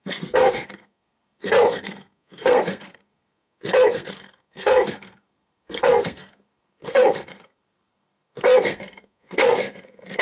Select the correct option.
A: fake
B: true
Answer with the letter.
A